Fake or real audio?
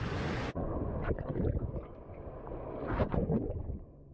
fake